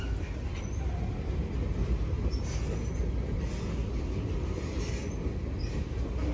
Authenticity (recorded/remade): recorded